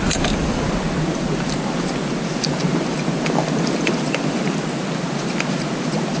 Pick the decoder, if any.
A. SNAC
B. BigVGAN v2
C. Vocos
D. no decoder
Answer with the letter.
D